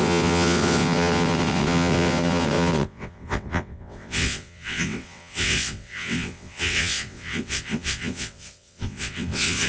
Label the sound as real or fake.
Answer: fake